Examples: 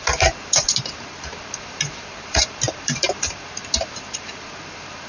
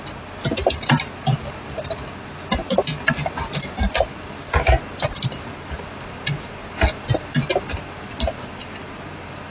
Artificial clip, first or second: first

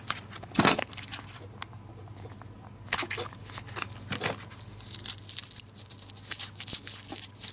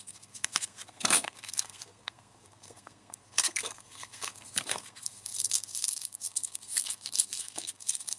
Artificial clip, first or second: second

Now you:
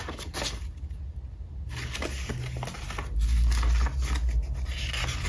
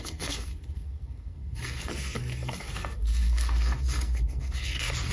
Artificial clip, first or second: second